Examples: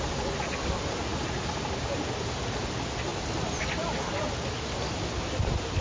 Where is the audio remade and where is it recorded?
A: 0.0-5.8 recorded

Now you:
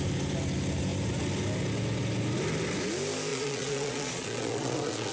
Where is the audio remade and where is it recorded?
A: 0.0-3.3 recorded; 3.3-5.1 remade

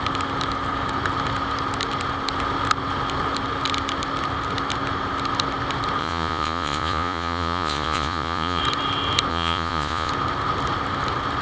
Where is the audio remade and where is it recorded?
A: 0.0-6.0 recorded; 6.0-8.6 remade; 8.6-9.3 recorded; 9.3-10.1 remade; 10.1-11.4 recorded

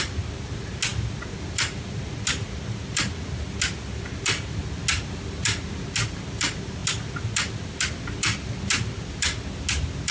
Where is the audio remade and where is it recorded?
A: 0.0-10.1 recorded

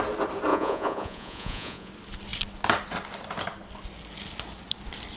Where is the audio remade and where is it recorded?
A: 0.0-0.5 recorded; 0.5-1.9 remade; 1.9-5.2 recorded